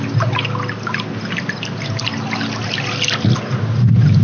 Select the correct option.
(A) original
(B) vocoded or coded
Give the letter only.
A